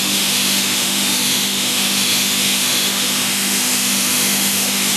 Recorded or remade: remade